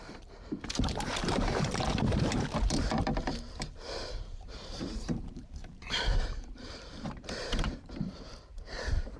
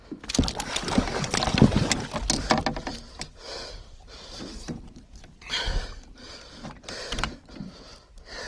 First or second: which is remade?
first